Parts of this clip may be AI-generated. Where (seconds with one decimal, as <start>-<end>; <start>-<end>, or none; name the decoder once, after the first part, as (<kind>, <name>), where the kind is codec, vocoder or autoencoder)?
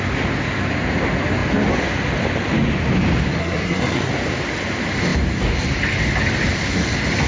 3.4-4.1 (codec, SNAC)